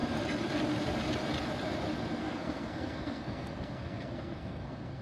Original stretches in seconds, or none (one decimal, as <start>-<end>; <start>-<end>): 0.0-2.2